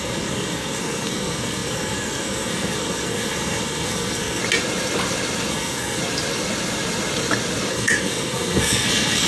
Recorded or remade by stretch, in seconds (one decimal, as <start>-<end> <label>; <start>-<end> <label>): 0.0-4.4 remade; 4.4-5.5 recorded; 5.5-6.0 remade; 6.0-7.7 recorded; 7.7-9.3 remade